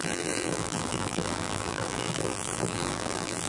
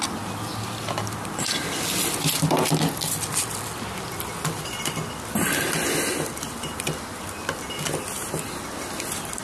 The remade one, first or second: first